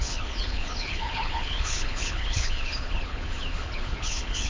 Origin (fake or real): fake